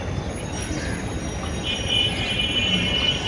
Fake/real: real